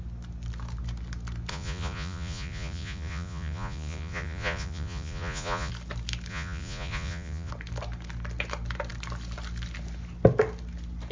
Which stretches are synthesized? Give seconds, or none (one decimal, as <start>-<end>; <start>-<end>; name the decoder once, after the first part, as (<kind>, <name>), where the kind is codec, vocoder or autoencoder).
1.5-5.7 (vocoder, Vocos); 6.3-7.5

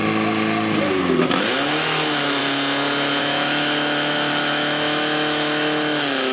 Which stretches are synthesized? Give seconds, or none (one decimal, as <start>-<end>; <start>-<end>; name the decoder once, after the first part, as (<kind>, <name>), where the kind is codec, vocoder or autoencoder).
0.8-2.4 (autoencoder, DAC-VAE); 3.2-6.3

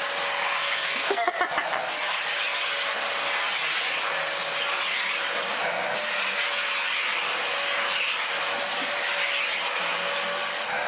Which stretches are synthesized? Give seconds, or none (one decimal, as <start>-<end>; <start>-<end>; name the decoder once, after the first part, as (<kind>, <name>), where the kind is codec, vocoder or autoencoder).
0.6-1.3 (codec, SNAC)

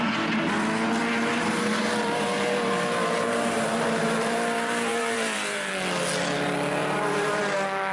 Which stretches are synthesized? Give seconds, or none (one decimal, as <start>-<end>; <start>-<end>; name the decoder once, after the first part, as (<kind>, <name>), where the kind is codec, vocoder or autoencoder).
1.0-5.7 (vocoder, BigVGAN v2); 6.8-7.4